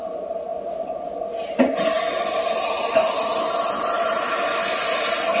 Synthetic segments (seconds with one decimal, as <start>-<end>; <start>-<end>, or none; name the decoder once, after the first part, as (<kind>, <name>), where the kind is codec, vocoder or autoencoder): none